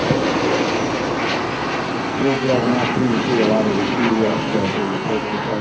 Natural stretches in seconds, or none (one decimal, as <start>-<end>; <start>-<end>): 0.0-2.1; 2.7-4.1